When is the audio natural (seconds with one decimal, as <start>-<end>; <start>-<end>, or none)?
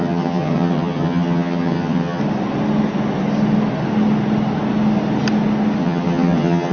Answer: 2.2-5.8